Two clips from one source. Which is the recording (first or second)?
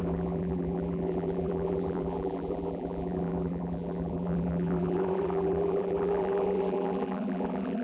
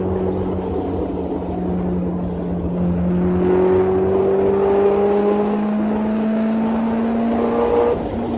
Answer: second